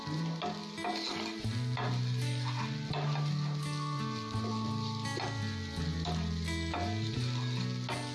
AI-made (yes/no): no